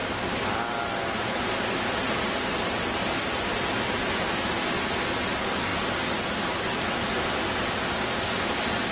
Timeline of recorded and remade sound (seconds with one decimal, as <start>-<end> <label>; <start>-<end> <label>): 0.0-8.9 recorded